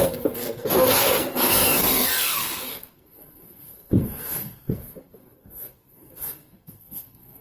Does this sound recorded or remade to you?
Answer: remade